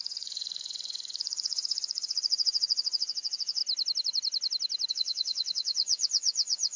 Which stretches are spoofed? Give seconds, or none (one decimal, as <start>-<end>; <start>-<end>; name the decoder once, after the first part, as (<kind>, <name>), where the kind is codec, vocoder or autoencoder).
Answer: 0.0-3.6 (vocoder, Vocos); 4.9-6.8